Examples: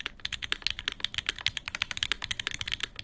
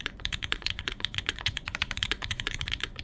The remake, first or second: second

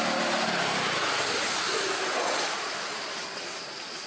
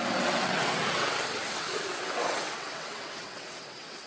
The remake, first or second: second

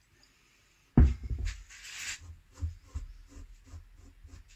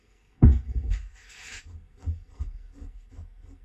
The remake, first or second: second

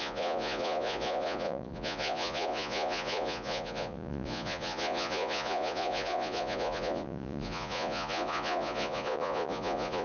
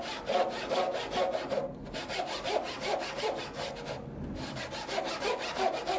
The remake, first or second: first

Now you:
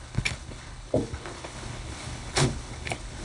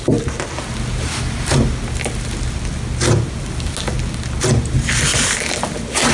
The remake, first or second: first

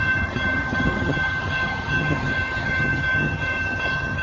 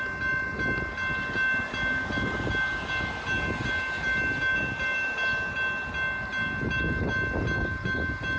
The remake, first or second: first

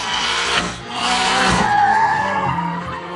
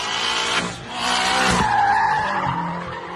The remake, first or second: first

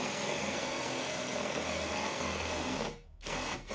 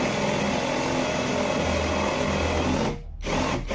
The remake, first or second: first